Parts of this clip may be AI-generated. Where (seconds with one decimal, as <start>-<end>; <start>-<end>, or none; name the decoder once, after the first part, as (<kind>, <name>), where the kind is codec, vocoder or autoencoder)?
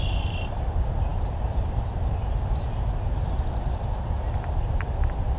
0.0-1.1 (vocoder, BigVGAN v2); 3.7-5.4